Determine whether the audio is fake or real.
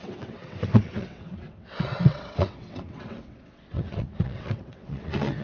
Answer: fake